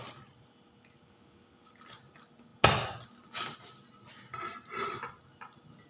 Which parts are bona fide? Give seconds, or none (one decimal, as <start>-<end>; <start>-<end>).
0.0-5.9